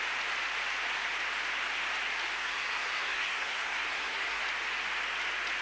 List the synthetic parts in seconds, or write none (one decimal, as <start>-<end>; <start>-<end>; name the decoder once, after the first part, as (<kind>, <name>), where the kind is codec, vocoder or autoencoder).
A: 2.4-4.4 (codec, SNAC)